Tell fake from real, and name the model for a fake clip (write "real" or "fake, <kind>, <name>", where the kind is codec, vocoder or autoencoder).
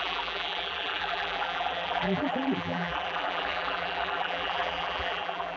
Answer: fake, vocoder, BigVGAN v2